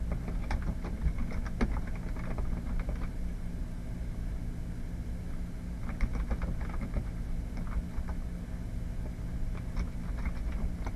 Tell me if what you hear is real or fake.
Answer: real